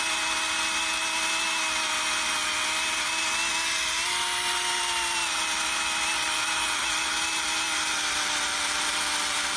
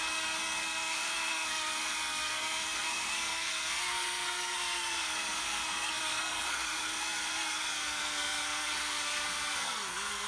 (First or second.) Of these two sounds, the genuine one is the first